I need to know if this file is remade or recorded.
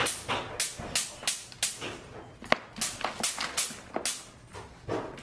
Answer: recorded